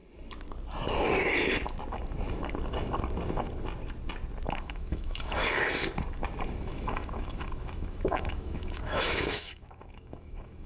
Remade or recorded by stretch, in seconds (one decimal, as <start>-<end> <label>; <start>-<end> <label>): 0.0-4.5 recorded; 4.5-5.4 remade; 5.4-6.6 recorded; 6.6-10.7 remade